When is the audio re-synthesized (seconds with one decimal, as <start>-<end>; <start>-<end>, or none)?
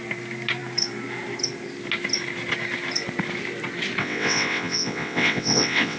4.0-6.0